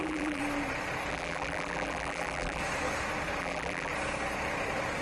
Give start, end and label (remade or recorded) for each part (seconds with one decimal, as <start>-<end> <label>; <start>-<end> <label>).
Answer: 0.0-0.4 remade; 0.4-1.1 recorded; 1.1-2.6 remade; 2.6-3.4 recorded; 3.4-3.9 remade; 3.9-5.0 recorded